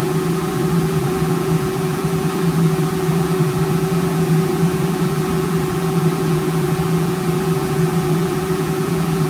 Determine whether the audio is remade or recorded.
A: remade